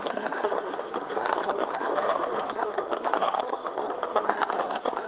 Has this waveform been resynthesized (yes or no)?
yes